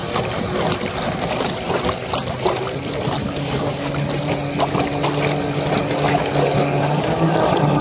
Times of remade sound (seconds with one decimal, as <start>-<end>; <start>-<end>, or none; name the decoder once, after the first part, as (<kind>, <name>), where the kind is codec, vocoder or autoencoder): 3.2-3.9 (codec, DAC); 6.1-7.3